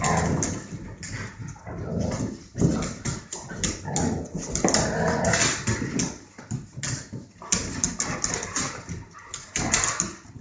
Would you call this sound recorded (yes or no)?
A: yes